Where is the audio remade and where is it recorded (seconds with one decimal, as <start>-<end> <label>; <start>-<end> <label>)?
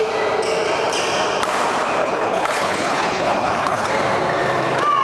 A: 0.0-2.0 recorded; 2.0-3.9 remade; 3.9-5.0 recorded